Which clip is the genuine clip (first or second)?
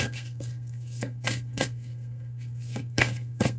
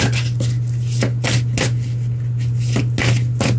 second